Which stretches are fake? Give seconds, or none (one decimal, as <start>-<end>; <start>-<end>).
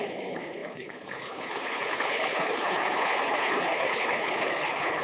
0.0-5.0